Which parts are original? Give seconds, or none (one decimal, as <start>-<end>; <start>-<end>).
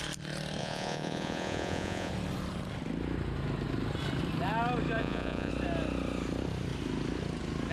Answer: 0.0-0.6; 2.1-5.0; 5.5-7.7